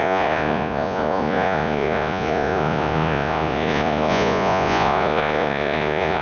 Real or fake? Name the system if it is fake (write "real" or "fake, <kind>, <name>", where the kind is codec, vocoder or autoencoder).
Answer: fake, vocoder, Vocos